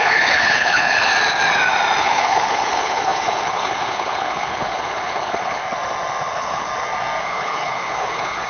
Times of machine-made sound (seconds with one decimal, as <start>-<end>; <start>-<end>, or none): 0.0-1.1; 2.0-5.6; 6.3-6.7; 7.2-8.5